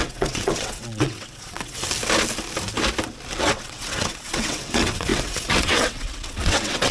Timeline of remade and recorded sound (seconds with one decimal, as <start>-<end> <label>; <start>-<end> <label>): 0.0-1.8 remade; 1.8-3.4 recorded; 3.4-6.9 remade